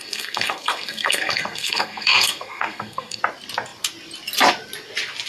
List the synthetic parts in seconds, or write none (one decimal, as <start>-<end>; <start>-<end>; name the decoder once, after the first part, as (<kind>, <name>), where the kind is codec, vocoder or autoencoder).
0.0-3.2 (codec, SNAC)